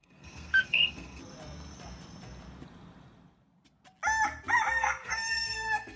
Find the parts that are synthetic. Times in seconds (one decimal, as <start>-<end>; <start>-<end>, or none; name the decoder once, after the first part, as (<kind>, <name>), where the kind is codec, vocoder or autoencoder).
0.0-1.2 (codec, SNAC); 4.8-6.0